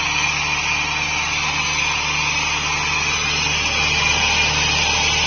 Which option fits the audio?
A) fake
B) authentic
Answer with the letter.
B